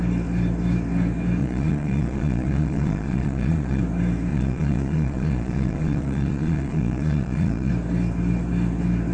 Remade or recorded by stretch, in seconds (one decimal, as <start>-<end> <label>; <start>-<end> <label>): 0.0-1.4 recorded; 1.4-3.8 remade; 3.8-4.3 recorded; 4.3-7.7 remade; 7.7-9.1 recorded